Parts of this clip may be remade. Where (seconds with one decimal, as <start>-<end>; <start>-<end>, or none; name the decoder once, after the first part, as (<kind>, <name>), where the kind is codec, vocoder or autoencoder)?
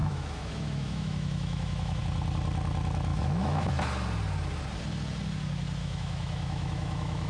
0.0-2.0 (autoencoder, DAC-VAE); 3.1-3.7; 5.8-7.3